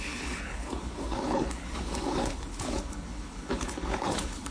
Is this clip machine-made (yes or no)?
yes